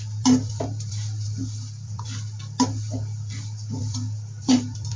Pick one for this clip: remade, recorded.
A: recorded